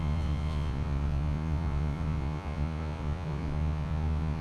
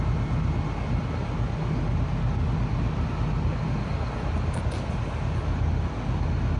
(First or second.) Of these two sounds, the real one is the second